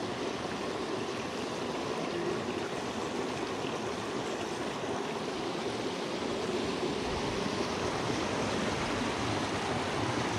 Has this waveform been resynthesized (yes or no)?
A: no